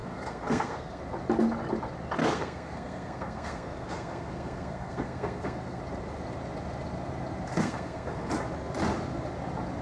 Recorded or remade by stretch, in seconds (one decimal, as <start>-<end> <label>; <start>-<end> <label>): 0.0-1.0 remade; 1.0-2.2 recorded; 2.2-5.8 remade; 5.8-7.5 recorded; 7.5-8.3 remade; 8.3-9.8 recorded